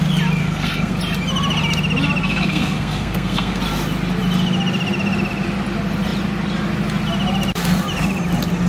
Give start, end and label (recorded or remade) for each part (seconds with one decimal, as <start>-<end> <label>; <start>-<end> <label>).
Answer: 0.0-0.4 recorded; 0.4-1.0 remade; 1.0-2.2 recorded; 2.2-3.6 remade; 3.6-8.7 recorded